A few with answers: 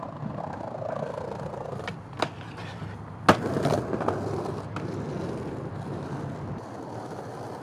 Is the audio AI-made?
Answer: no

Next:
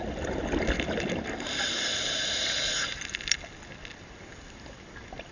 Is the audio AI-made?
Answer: no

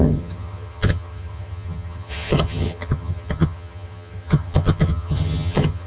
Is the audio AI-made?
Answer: yes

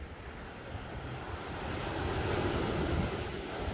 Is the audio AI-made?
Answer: no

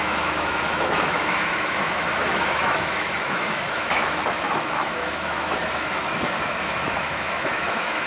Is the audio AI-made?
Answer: yes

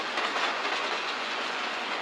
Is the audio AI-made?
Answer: yes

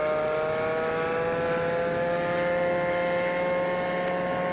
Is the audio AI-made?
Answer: no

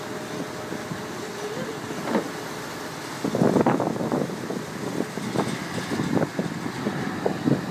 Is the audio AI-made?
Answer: no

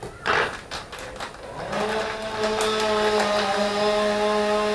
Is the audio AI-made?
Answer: no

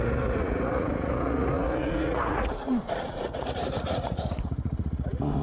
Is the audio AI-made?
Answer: yes